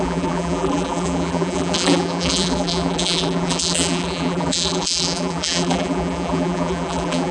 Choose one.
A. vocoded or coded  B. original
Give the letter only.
A